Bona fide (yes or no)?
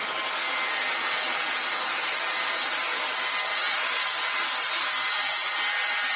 yes